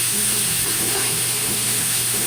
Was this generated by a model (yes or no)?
yes